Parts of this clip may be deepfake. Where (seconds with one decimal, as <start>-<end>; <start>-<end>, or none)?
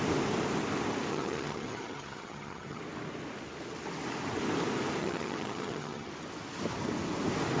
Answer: 1.1-2.8; 5.0-6.1